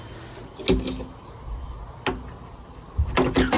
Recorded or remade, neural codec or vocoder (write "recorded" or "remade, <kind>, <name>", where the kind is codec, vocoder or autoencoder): recorded